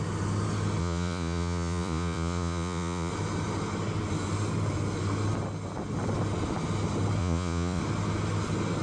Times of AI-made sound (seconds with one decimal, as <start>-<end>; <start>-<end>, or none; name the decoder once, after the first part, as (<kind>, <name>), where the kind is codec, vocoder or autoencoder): 0.8-3.1 (vocoder, Vocos); 7.2-7.8